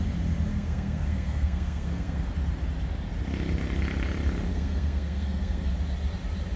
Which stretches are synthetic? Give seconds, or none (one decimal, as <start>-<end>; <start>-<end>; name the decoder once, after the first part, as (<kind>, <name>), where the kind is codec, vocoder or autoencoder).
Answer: 0.5-2.2 (codec, SNAC); 4.5-5.7